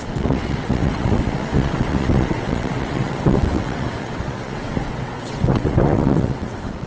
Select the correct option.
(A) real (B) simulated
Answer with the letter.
B